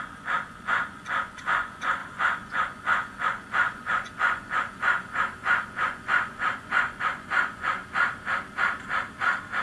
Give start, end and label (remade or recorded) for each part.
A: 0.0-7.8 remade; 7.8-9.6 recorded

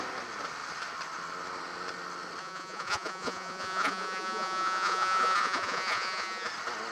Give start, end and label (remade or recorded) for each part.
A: 0.0-2.4 recorded; 2.4-6.5 remade; 6.5-6.9 recorded

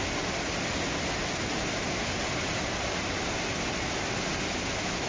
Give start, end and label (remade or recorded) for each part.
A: 0.0-5.1 recorded

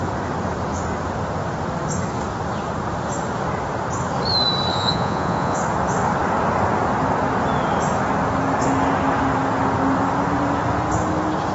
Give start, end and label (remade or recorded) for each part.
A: 0.0-4.7 recorded; 4.7-5.6 remade; 5.6-11.5 recorded

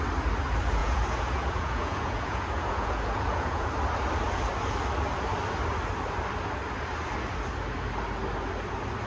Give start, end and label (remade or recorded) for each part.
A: 0.0-0.8 recorded; 0.8-3.7 remade; 3.7-9.1 recorded